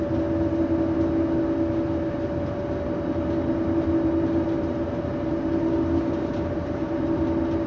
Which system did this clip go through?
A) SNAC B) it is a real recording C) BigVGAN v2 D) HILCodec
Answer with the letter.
B